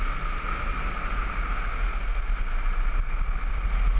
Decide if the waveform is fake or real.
real